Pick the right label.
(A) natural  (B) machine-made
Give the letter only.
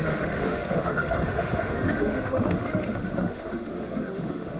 B